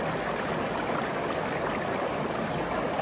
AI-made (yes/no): no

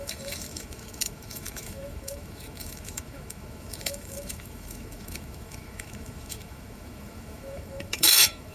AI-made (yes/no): yes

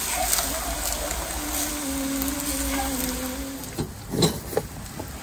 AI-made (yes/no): no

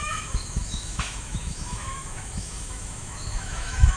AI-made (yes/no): yes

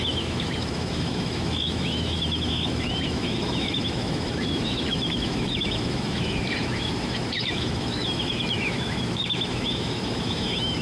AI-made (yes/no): yes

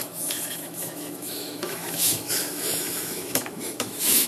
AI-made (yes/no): yes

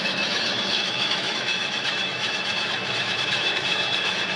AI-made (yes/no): yes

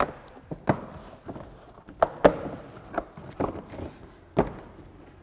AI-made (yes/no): no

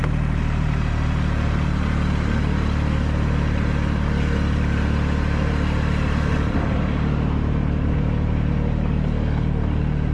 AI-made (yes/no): no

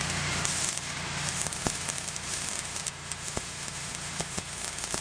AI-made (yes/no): yes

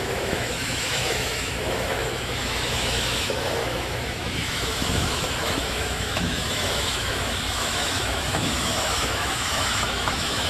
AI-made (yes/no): yes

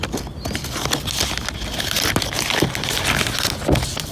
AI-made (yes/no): no